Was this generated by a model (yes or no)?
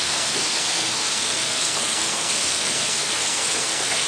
yes